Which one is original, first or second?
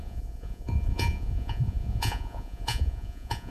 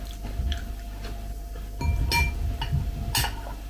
second